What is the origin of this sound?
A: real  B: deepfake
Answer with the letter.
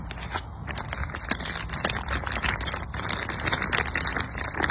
A